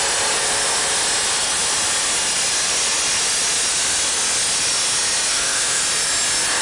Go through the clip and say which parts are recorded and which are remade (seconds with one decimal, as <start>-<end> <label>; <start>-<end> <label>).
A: 0.0-5.3 recorded; 5.3-5.8 remade; 5.8-6.6 recorded